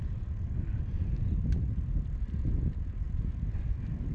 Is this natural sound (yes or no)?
yes